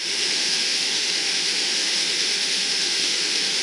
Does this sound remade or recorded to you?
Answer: remade